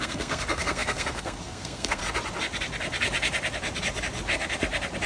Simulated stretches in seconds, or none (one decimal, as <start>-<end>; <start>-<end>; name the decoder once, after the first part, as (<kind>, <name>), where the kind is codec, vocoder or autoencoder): 0.0-2.0 (codec, SNAC)